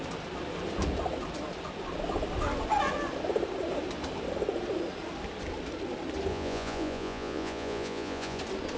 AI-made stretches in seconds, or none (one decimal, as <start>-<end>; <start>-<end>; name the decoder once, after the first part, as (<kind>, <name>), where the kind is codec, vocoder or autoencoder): 6.3-8.4 (vocoder, Vocos)